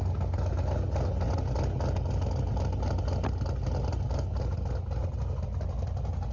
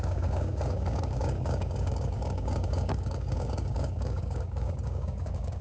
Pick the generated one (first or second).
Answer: second